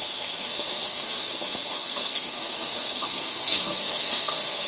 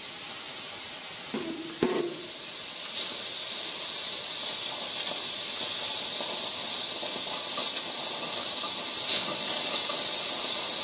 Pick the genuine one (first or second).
second